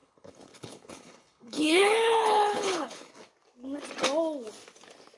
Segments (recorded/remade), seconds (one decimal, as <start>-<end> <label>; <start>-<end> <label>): 0.0-3.1 remade; 3.1-5.2 recorded